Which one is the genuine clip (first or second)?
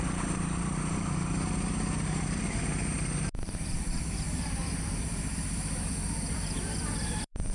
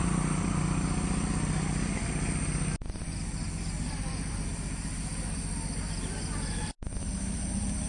second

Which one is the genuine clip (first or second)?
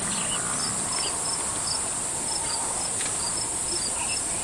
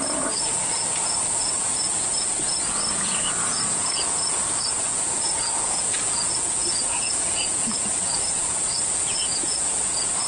first